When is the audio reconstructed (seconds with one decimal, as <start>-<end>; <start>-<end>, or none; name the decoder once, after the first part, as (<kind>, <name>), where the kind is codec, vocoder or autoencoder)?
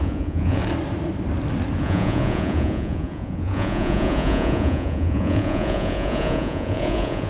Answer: 0.0-0.6 (vocoder, Vocos); 1.8-7.3